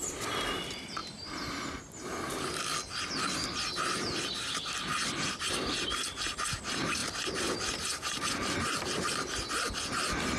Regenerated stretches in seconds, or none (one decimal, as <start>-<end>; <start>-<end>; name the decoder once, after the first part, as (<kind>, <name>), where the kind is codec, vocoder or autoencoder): 1.0-1.6 (vocoder, BigVGAN v2); 7.0-8.3